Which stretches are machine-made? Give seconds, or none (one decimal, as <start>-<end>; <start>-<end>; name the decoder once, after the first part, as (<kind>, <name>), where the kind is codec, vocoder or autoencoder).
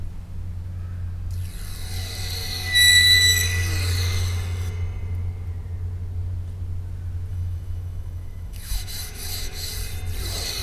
7.3-9.7 (autoencoder, DAC-VAE)